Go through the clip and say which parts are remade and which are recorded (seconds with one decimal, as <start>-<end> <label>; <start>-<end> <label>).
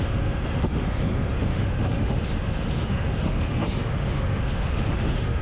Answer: 0.0-5.4 remade